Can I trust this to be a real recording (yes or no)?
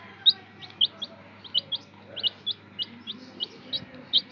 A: yes